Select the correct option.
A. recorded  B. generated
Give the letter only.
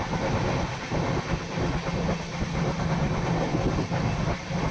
A